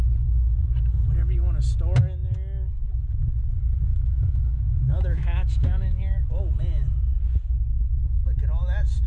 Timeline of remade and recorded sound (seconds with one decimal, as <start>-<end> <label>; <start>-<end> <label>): 0.0-3.9 recorded; 3.9-6.4 remade; 6.4-9.1 recorded

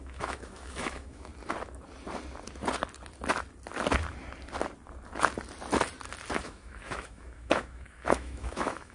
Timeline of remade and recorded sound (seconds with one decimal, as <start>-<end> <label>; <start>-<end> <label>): 0.0-1.3 remade; 1.3-6.4 recorded; 6.4-8.9 remade

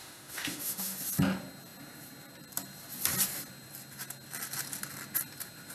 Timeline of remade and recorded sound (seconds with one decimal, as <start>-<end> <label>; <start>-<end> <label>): 0.0-1.0 remade; 1.0-5.7 recorded

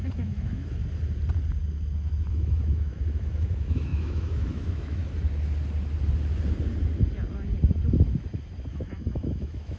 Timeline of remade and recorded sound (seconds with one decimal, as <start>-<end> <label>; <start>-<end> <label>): 0.0-0.8 remade; 0.8-2.3 recorded; 2.3-5.0 remade; 5.0-8.7 recorded; 8.7-9.8 remade

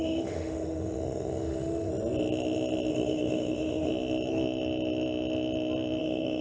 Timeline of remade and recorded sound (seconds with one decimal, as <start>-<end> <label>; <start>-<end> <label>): 0.0-1.9 remade; 1.9-2.9 recorded; 2.9-3.9 remade; 3.9-6.0 recorded; 6.0-6.4 remade

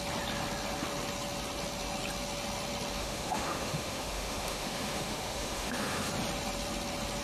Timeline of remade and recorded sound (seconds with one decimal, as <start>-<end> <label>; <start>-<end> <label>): 0.0-3.0 recorded; 3.0-6.1 remade; 6.1-7.2 recorded

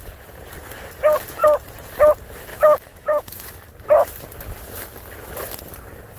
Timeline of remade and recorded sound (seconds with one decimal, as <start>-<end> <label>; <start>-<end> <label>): 0.0-2.5 recorded; 2.5-3.5 remade; 3.5-6.2 recorded

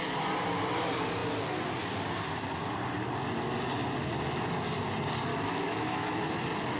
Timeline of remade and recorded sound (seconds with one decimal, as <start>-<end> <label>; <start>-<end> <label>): 0.0-5.3 recorded; 5.3-6.2 remade; 6.2-6.8 recorded